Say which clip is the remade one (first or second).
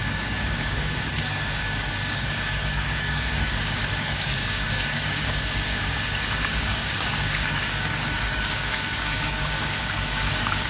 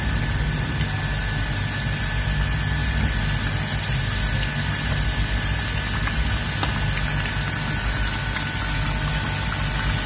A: first